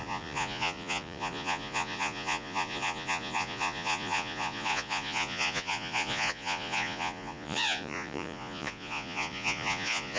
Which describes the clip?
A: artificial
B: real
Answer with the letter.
A